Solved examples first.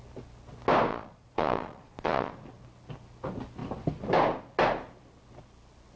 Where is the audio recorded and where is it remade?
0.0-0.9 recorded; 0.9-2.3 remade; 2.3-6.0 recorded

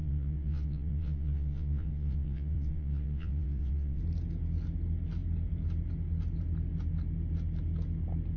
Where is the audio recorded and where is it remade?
0.0-4.0 remade; 4.0-8.4 recorded

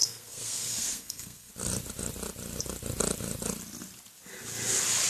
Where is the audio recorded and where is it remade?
0.0-1.5 remade; 1.5-5.1 recorded

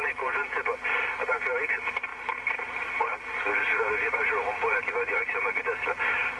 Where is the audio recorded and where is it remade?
0.0-6.4 recorded

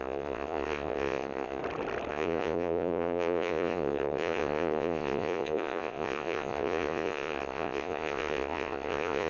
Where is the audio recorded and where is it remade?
0.0-1.6 remade; 1.6-2.1 recorded; 2.1-9.3 remade

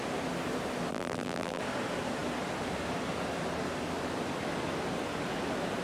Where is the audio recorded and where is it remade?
0.0-0.9 recorded; 0.9-1.6 remade; 1.6-5.8 recorded

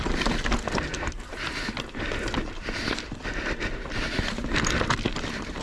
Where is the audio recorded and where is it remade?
0.0-5.6 recorded